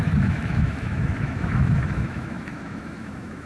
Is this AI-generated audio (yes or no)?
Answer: yes